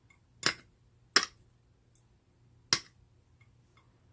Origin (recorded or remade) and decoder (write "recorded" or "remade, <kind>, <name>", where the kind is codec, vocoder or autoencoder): recorded